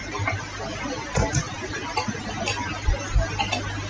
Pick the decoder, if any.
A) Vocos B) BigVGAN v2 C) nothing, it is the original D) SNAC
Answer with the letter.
C